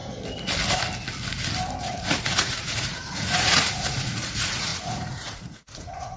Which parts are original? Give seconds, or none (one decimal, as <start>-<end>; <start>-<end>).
0.0-1.8